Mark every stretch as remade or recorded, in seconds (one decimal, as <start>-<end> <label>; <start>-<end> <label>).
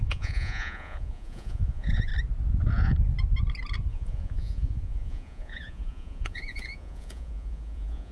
0.0-2.1 remade; 2.1-3.9 recorded; 3.9-8.1 remade